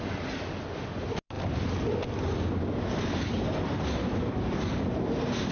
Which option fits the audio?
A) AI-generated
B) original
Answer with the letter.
B